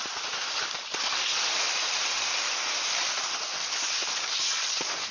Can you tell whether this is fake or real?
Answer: fake